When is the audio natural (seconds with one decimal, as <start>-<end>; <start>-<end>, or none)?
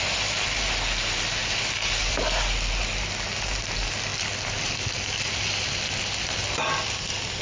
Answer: 0.0-7.4